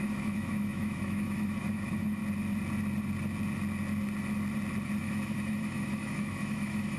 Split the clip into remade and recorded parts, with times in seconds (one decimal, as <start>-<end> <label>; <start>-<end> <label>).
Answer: 0.0-2.2 remade; 2.2-5.0 recorded; 5.0-7.0 remade